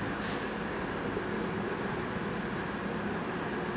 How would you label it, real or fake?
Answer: real